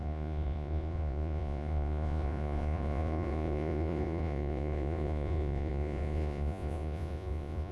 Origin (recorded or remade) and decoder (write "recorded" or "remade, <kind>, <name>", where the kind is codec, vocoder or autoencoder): remade, vocoder, Vocos